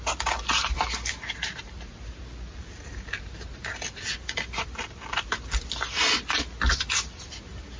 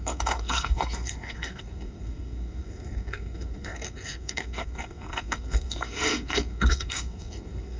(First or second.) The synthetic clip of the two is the second